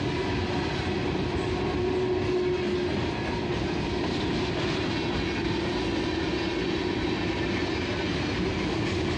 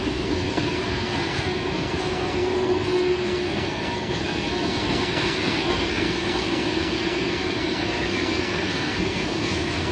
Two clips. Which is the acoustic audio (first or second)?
first